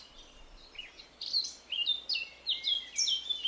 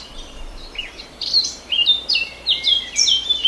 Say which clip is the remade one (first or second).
second